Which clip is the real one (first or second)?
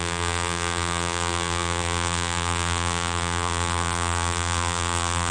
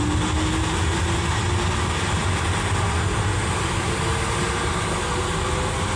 second